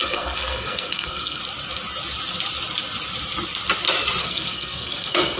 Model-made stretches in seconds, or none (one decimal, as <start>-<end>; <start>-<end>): 0.0-1.4; 4.2-5.4